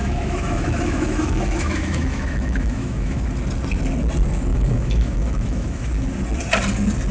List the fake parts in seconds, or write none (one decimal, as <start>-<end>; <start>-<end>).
0.0-3.3; 4.5-5.9